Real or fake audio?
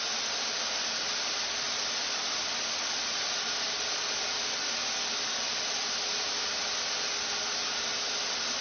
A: real